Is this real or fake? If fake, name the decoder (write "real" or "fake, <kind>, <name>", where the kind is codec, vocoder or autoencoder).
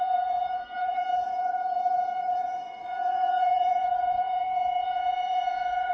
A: fake, vocoder, Vocos